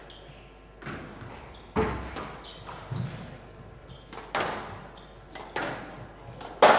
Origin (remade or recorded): recorded